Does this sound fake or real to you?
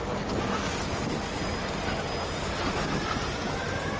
real